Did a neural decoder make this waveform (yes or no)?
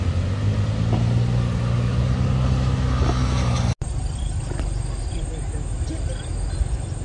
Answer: no